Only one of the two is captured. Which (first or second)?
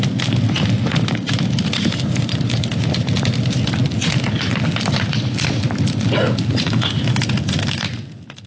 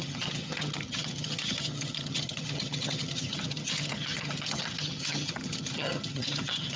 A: first